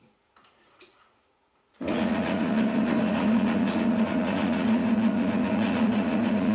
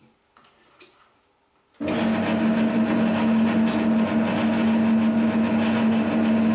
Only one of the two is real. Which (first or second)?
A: second